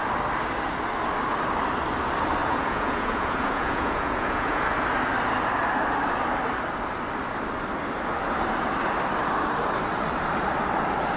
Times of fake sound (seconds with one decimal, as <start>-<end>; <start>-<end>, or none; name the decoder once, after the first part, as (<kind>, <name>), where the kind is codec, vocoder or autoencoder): 2.4-4.6 (vocoder, Vocos)